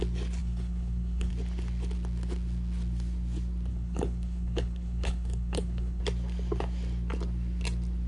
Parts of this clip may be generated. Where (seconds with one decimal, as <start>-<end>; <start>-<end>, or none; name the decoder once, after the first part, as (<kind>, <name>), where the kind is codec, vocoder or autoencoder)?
0.4-1.3 (codec, HILCodec); 3.7-6.0